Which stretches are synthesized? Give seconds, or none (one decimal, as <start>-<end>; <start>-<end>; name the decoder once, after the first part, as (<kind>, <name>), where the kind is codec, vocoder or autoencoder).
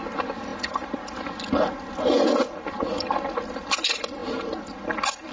none